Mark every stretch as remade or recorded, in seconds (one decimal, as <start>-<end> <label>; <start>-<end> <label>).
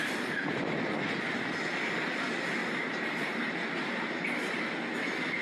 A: 0.0-2.6 recorded; 2.6-3.5 remade; 3.5-5.4 recorded